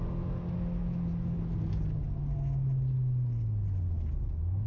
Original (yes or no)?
yes